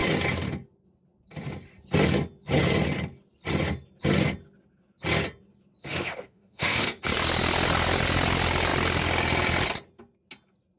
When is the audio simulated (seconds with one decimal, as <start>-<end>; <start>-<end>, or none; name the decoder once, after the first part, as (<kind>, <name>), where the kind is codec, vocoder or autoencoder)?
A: 5.8-7.0 (autoencoder, DAC-VAE)